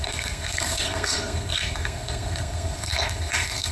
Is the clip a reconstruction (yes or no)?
yes